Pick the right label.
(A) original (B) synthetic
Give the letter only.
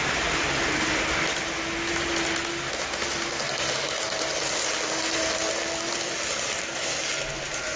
A